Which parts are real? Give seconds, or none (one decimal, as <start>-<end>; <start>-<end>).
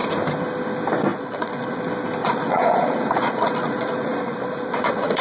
0.0-1.1; 1.8-2.2